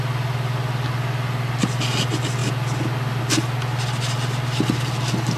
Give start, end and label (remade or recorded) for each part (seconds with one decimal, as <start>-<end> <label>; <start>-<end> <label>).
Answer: 0.0-5.4 recorded